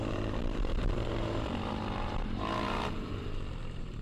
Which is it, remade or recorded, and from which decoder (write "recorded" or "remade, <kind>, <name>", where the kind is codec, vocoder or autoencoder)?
remade, vocoder, BigVGAN v2